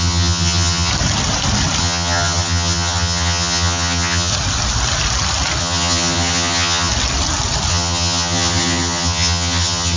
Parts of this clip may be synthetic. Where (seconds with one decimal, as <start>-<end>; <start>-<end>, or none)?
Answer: 0.0-0.9; 1.8-4.3; 5.6-6.9; 7.7-10.0